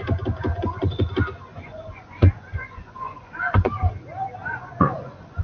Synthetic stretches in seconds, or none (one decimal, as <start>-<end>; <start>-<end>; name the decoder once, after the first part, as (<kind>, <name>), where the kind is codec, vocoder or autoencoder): 0.5-1.0 (vocoder, Vocos); 1.5-3.9; 4.4-5.4